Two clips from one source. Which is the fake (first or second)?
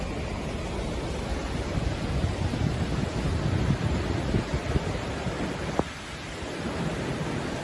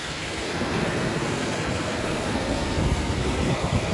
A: second